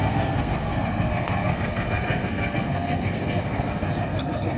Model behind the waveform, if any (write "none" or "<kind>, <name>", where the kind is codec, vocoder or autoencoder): codec, SNAC